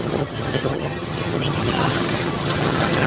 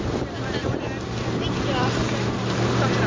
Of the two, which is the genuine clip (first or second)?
second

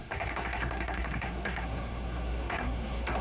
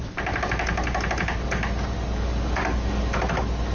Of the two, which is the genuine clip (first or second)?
second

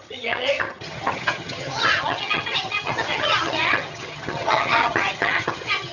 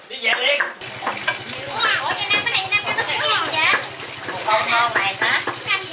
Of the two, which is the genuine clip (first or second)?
second